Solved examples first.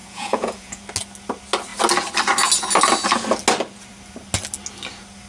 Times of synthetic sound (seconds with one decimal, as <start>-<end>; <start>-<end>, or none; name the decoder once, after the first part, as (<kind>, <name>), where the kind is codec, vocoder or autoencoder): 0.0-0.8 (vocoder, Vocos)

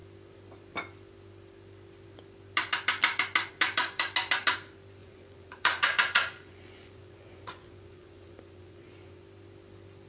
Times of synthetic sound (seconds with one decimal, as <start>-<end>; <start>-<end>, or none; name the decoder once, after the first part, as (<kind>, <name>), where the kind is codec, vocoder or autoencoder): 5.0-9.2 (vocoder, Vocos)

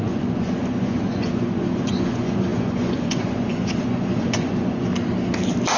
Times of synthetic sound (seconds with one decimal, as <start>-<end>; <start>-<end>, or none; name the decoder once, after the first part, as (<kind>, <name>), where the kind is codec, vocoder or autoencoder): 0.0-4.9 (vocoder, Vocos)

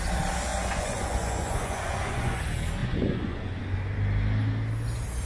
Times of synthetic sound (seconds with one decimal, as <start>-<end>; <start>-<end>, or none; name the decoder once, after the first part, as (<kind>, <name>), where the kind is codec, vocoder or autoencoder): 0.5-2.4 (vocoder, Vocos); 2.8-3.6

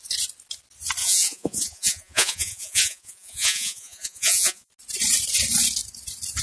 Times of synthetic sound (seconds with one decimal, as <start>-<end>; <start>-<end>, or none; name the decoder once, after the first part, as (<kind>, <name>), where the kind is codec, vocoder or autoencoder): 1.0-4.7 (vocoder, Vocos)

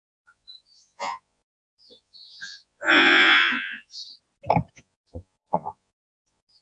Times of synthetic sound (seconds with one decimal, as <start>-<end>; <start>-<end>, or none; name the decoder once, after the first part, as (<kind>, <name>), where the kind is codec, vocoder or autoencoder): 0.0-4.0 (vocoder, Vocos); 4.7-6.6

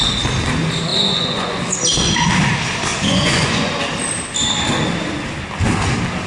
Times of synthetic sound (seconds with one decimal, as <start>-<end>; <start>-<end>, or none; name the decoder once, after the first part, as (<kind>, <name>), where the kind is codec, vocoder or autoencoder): 0.9-1.6 (vocoder, Vocos); 2.9-3.8